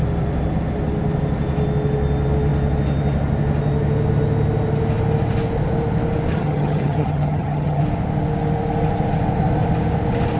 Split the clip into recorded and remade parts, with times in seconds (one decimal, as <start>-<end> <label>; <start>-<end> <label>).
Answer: 0.0-6.3 recorded; 6.3-7.8 remade; 7.8-10.4 recorded